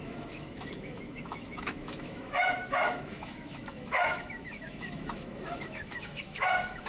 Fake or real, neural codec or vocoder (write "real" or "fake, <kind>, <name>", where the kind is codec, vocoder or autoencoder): fake, autoencoder, DAC-VAE